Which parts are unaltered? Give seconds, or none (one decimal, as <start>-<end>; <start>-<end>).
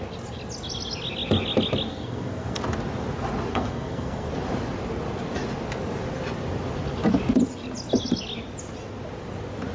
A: 0.0-1.9; 2.6-3.5; 4.3-9.7